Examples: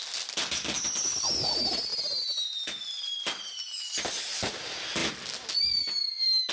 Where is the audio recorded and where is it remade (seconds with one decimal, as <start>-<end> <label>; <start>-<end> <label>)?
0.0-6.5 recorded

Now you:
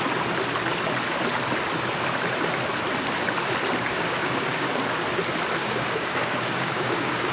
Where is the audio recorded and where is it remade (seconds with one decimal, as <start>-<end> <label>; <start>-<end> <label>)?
0.0-3.9 recorded; 3.9-4.8 remade; 4.8-5.6 recorded; 5.6-7.3 remade

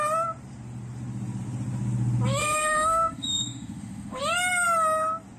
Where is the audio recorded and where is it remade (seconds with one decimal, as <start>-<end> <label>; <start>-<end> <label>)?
0.0-2.4 recorded; 2.4-4.2 remade; 4.2-5.4 recorded

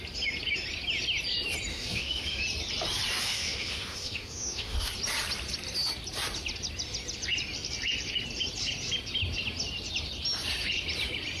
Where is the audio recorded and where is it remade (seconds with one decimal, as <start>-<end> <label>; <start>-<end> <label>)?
0.0-1.7 recorded; 1.7-2.4 remade; 2.4-3.2 recorded; 3.2-4.9 remade; 4.9-11.4 recorded